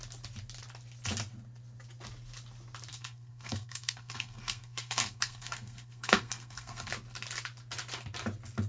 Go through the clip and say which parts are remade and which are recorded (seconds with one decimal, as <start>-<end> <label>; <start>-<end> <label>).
0.0-2.9 recorded; 2.9-6.9 remade; 6.9-8.7 recorded